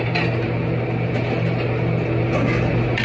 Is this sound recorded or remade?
recorded